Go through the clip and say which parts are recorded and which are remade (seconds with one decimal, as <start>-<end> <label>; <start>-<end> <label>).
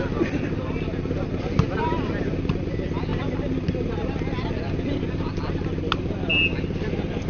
0.0-7.3 recorded